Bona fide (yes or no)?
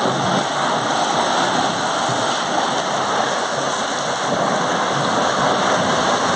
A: yes